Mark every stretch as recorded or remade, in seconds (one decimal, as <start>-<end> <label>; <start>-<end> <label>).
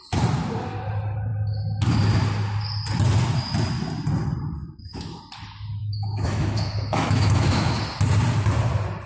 0.0-4.6 recorded; 4.6-5.2 remade; 5.2-5.8 recorded; 5.8-7.8 remade; 7.8-9.1 recorded